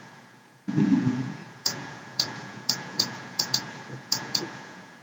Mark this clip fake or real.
fake